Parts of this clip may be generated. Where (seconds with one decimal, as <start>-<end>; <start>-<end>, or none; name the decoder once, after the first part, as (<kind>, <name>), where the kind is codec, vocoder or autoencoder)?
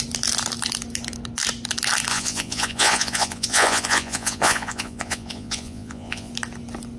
2.1-6.3 (vocoder, Vocos)